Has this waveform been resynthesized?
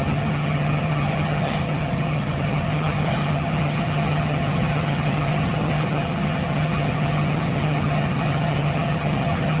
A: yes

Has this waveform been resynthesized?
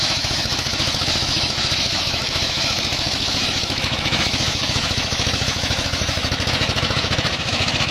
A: yes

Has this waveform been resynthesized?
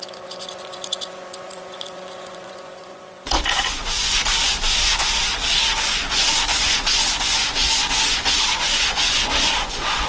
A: yes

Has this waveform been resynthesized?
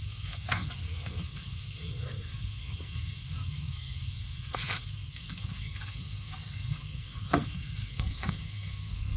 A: yes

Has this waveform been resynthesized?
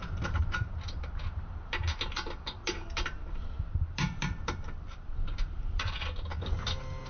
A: yes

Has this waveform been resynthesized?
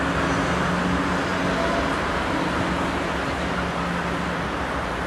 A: no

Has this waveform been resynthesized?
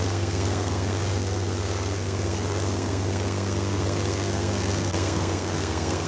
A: yes